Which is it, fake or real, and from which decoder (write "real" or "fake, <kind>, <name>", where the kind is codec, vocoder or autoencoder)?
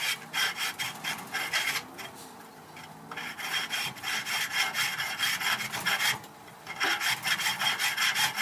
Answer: real